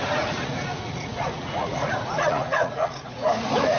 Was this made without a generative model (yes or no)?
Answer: no